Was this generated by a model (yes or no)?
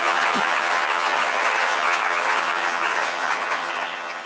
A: yes